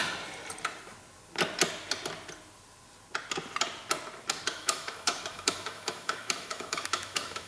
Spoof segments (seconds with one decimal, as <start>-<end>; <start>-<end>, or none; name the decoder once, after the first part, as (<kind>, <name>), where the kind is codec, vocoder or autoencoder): 4.5-7.5 (autoencoder, DAC-VAE)